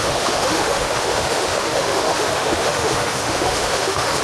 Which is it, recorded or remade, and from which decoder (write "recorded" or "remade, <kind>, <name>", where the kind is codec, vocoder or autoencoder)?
remade, autoencoder, DAC-VAE